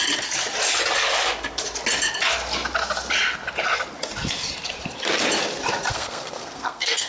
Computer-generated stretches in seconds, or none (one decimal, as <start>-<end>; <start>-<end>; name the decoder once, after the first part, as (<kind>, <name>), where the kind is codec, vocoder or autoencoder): 5.9-7.1 (codec, SNAC)